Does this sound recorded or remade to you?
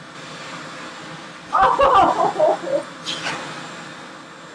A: recorded